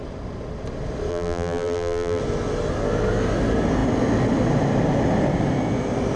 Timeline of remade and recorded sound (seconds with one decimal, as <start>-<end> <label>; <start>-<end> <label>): 0.0-1.1 recorded; 1.1-2.2 remade; 2.2-6.2 recorded